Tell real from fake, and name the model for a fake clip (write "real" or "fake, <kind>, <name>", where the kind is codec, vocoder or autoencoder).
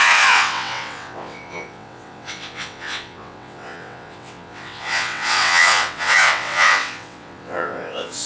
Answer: fake, vocoder, WaveNeXt